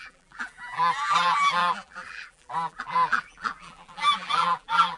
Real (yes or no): no